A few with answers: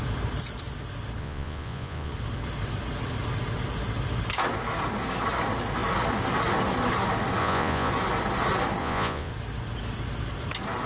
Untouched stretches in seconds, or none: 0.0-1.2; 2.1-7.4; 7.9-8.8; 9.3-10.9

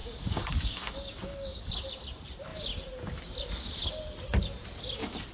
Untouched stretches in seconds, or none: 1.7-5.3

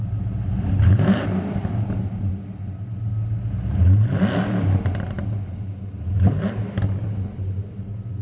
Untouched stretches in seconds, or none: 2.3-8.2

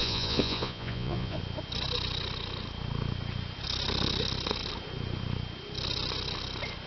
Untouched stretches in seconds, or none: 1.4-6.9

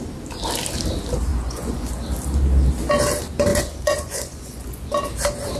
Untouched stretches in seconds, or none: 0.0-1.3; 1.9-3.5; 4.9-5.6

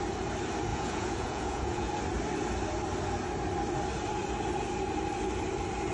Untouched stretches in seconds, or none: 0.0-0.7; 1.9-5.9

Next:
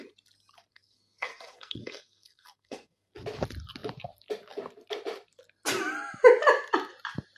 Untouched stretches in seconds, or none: 0.0-0.7; 3.1-7.4

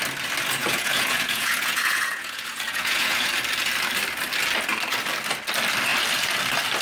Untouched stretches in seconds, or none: 0.0-0.6; 3.3-6.8